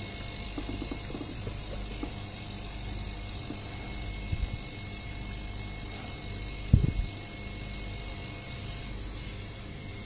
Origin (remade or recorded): recorded